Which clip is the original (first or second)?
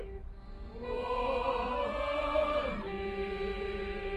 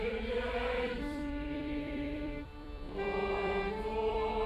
first